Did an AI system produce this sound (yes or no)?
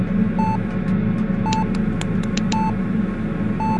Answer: no